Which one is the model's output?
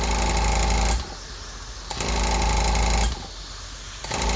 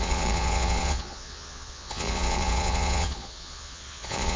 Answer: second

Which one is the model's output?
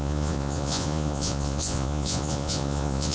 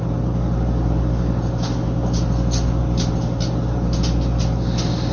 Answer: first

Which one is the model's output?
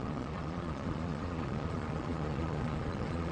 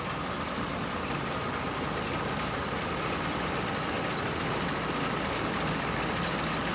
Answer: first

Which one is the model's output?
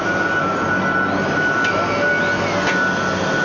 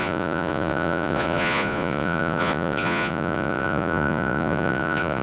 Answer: second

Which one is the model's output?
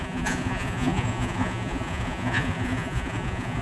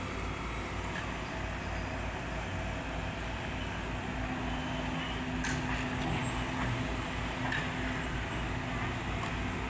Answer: first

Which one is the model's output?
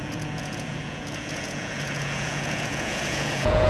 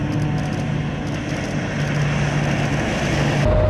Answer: first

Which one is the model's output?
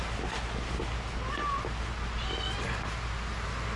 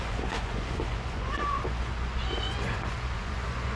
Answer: second